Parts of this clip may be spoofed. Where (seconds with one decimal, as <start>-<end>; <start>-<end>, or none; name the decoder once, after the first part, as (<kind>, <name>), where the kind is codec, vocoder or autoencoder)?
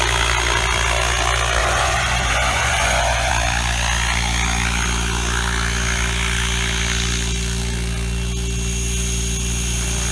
1.6-3.3 (vocoder, Vocos)